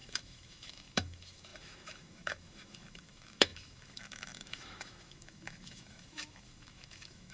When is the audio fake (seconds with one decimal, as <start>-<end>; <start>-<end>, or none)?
0.0-7.3

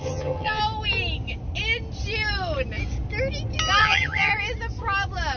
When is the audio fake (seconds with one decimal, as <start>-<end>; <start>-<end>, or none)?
0.0-0.6; 3.8-4.3

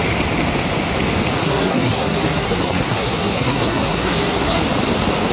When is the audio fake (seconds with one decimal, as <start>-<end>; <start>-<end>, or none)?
1.4-4.6

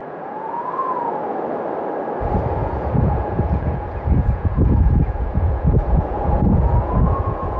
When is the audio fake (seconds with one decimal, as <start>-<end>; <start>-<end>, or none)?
0.0-1.1; 2.6-7.6

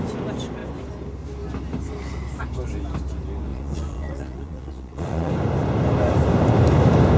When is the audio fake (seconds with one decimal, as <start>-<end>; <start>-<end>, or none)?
3.5-5.3